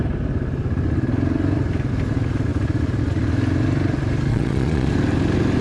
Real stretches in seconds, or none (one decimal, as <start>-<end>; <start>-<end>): 0.0-4.3; 4.9-5.6